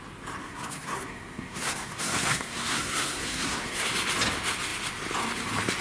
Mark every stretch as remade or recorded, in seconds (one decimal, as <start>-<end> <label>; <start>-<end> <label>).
0.0-0.4 recorded; 0.4-3.9 remade; 3.9-5.8 recorded